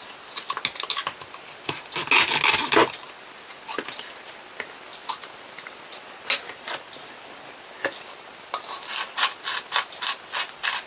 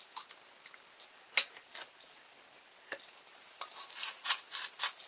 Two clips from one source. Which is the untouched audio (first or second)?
first